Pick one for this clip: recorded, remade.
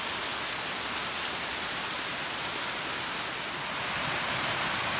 recorded